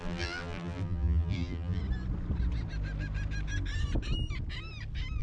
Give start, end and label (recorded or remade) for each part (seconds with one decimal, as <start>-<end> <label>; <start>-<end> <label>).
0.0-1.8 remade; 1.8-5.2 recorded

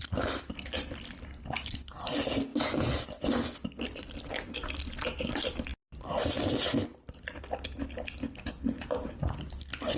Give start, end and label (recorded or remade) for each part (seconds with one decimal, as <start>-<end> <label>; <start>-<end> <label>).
0.0-10.0 recorded

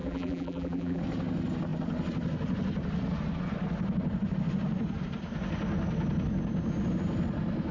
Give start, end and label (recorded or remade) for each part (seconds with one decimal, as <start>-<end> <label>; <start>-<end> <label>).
0.0-1.0 remade; 1.0-7.7 recorded

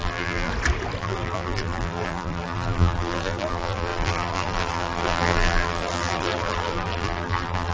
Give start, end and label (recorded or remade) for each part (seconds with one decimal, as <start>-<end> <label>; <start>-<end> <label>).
0.0-0.5 remade; 0.5-1.0 recorded; 1.0-7.7 remade

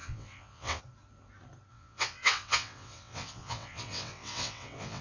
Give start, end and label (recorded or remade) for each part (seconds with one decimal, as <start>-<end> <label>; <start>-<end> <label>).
0.0-0.8 remade; 0.8-1.7 recorded; 1.7-5.0 remade

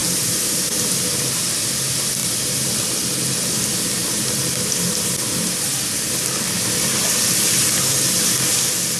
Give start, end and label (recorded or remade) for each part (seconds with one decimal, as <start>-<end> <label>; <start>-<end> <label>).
0.0-1.4 remade; 1.4-9.0 recorded

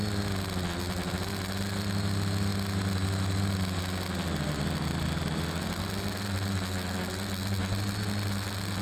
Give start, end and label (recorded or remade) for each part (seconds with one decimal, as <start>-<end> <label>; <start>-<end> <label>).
0.0-8.8 recorded